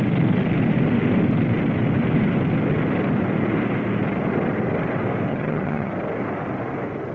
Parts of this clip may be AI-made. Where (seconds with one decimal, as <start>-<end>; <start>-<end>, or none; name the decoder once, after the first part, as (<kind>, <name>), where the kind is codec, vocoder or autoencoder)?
5.3-5.9 (vocoder, HiFi-GAN)